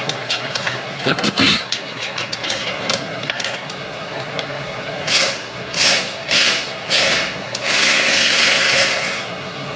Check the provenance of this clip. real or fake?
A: fake